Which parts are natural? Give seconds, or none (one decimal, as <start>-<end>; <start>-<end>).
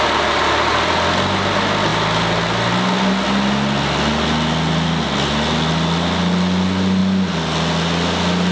0.0-8.5